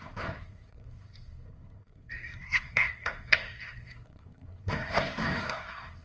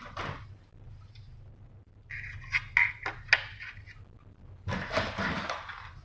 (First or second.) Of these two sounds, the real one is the second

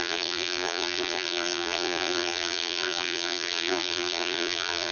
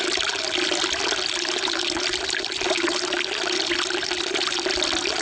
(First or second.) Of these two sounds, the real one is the second